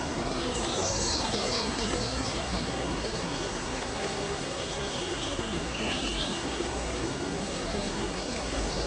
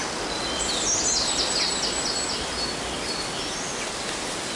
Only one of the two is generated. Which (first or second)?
first